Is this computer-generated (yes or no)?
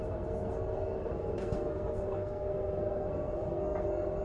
yes